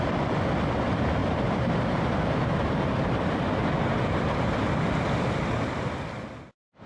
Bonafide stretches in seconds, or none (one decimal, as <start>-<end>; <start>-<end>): 0.0-1.2; 3.0-6.9